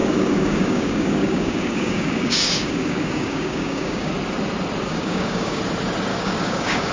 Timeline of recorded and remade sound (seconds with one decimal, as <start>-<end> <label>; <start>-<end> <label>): 0.0-4.1 remade; 4.1-4.9 recorded; 4.9-5.6 remade; 5.6-6.1 recorded; 6.1-6.9 remade